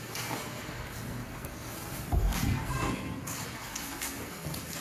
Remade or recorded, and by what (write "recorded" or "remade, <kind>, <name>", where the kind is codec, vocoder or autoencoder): remade, codec, SNAC